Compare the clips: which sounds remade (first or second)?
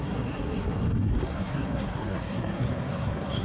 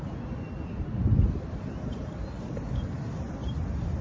first